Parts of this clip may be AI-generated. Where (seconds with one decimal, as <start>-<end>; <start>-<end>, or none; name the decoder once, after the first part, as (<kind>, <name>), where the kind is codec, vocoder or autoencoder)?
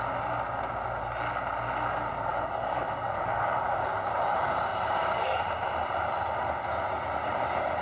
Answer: 2.3-3.9 (codec, DAC); 4.7-5.4